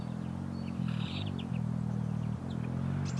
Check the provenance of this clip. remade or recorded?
recorded